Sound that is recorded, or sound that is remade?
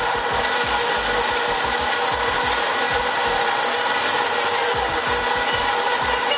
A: recorded